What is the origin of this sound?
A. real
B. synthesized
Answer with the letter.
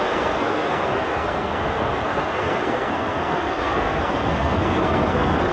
B